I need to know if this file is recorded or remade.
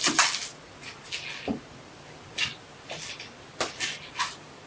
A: recorded